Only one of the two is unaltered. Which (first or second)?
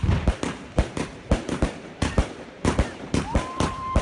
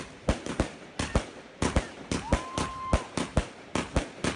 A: second